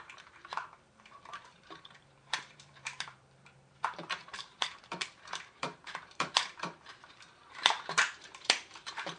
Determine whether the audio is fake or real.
fake